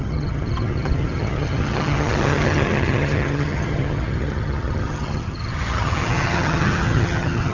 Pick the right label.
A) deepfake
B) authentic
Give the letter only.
A